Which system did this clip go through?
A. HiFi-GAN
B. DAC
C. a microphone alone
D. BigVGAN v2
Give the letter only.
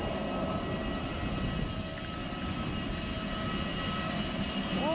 C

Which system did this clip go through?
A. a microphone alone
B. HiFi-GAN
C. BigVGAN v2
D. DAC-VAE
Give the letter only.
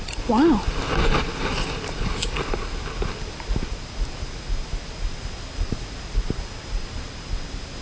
A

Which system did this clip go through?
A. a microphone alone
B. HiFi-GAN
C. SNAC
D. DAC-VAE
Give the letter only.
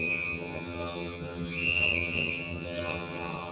B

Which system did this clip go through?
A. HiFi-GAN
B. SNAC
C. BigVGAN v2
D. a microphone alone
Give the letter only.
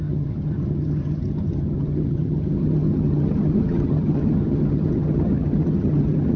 A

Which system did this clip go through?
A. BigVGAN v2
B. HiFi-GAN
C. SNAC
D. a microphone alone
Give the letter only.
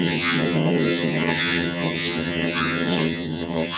B